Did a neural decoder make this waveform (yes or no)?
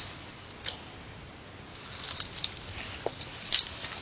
no